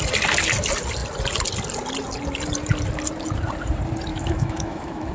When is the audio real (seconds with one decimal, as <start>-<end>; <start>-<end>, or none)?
0.0-4.1